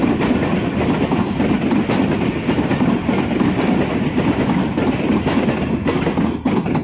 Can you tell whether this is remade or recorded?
recorded